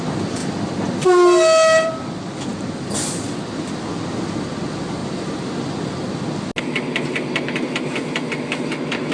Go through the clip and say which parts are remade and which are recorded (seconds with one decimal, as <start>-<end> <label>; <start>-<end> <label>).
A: 0.0-9.1 recorded